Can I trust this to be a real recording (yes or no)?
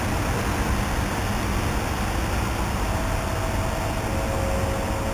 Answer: yes